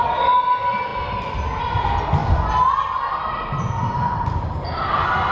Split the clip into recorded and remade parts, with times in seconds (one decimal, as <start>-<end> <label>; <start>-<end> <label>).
0.0-5.3 recorded